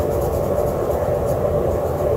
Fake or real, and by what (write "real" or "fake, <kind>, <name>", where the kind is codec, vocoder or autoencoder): real